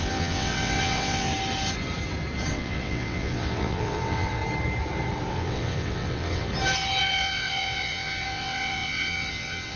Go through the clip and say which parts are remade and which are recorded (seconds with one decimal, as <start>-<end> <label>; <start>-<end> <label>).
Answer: 0.0-1.3 remade; 1.3-2.5 recorded; 2.5-4.4 remade; 4.4-5.3 recorded; 5.3-6.5 remade; 6.5-7.0 recorded; 7.0-9.8 remade